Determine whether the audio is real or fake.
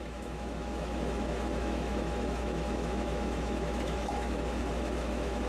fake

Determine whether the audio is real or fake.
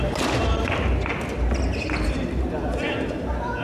real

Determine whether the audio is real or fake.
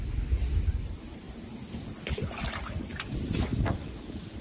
real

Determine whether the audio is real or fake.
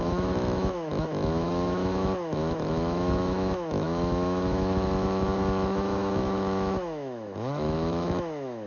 fake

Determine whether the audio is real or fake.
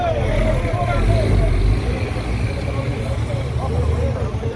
real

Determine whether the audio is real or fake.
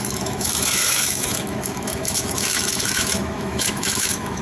fake